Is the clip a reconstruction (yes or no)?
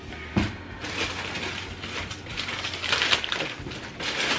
no